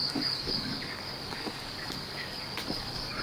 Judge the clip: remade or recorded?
remade